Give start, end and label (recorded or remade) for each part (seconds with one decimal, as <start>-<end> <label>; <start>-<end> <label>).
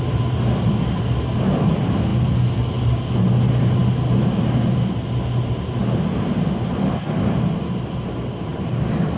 0.0-9.2 recorded